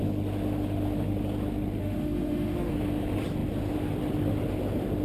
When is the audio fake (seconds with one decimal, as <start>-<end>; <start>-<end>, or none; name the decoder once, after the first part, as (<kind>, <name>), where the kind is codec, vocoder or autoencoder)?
1.8-2.7 (autoencoder, DAC-VAE)